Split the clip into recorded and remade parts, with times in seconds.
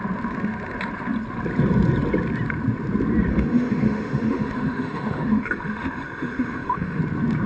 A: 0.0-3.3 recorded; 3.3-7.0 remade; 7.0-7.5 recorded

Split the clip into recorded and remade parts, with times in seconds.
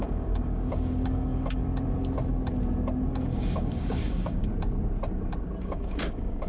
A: 0.0-1.6 remade; 1.6-3.1 recorded; 3.1-4.4 remade; 4.4-5.6 recorded; 5.6-6.5 remade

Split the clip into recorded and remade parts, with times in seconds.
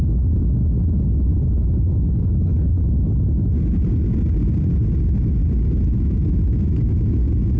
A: 0.0-7.6 recorded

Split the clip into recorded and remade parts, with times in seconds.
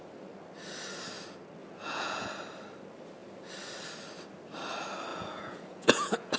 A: 0.0-1.6 recorded; 1.6-2.3 remade; 2.3-5.1 recorded; 5.1-6.4 remade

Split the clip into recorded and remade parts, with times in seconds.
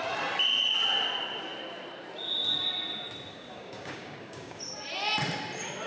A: 0.0-3.3 recorded; 3.3-4.6 remade; 4.6-5.9 recorded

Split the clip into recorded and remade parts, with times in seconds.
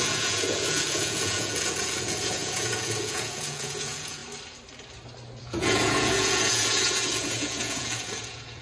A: 0.0-4.2 remade; 4.2-5.4 recorded; 5.4-8.6 remade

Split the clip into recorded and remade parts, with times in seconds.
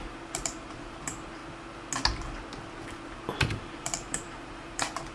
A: 0.0-1.4 remade; 1.4-3.2 recorded; 3.2-5.1 remade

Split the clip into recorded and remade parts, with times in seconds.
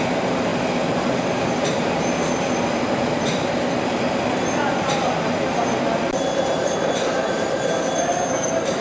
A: 0.0-8.8 recorded